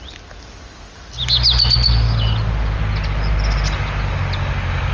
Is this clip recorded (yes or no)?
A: yes